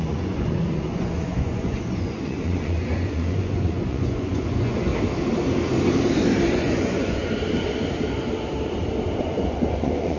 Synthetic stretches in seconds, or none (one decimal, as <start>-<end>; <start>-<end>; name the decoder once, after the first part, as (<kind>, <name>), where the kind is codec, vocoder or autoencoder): 0.0-4.9 (vocoder, Vocos); 6.5-7.2; 9.2-10.2